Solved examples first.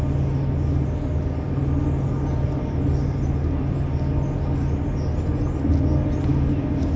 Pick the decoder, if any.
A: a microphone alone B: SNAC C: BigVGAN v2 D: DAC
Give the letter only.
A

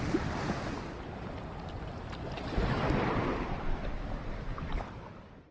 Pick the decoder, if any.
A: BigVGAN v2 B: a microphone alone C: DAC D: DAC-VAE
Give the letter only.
B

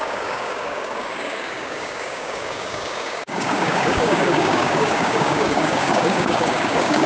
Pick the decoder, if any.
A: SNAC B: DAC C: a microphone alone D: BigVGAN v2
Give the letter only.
B